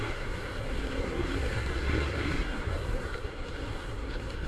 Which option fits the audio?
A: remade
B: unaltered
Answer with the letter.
A